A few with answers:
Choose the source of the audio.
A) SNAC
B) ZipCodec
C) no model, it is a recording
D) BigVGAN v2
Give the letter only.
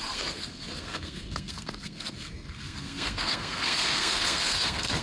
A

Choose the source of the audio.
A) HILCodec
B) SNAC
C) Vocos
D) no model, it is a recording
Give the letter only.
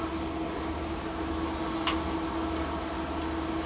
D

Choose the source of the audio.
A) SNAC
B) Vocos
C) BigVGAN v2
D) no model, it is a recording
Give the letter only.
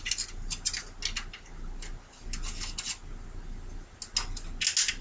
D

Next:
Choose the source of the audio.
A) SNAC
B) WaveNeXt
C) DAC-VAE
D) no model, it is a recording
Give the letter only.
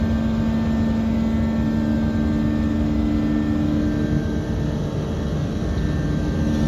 D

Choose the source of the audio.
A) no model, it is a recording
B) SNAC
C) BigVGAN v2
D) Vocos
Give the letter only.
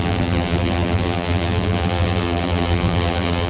C